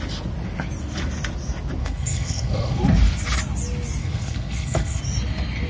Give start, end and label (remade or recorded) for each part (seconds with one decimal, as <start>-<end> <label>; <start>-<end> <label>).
0.0-1.8 recorded; 1.8-2.8 remade; 2.8-4.0 recorded; 4.0-5.0 remade; 5.0-5.7 recorded